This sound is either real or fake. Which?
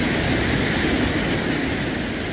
real